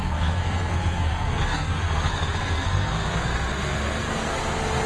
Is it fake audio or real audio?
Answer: fake